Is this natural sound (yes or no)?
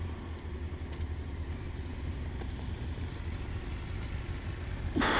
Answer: yes